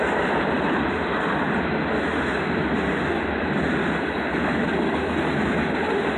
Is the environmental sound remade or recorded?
recorded